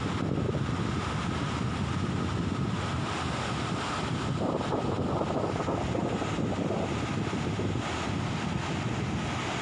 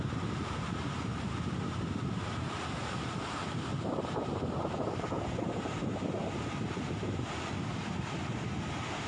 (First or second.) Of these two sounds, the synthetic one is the second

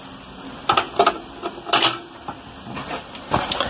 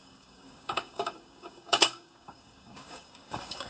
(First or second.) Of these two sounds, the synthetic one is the second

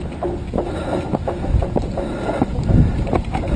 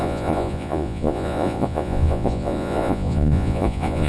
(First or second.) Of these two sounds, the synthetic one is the second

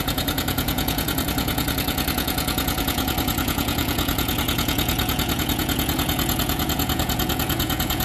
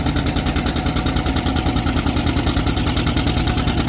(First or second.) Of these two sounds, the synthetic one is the first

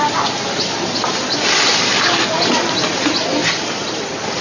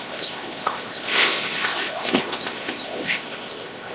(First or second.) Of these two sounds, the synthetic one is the second